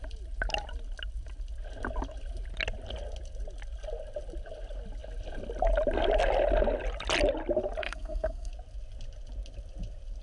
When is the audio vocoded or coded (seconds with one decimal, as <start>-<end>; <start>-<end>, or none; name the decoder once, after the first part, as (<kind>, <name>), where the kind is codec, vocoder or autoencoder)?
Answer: 7.8-8.5 (codec, SNAC)